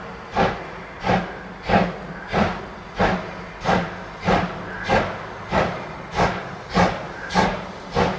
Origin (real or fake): real